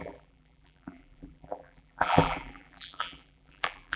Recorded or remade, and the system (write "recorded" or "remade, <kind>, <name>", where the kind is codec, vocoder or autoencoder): remade, vocoder, BigVGAN v2